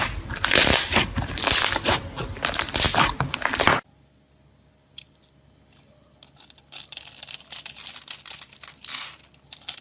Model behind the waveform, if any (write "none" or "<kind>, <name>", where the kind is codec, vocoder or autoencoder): none